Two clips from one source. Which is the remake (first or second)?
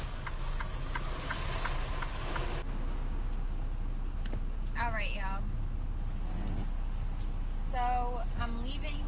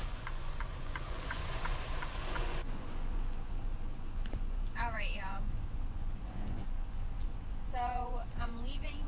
second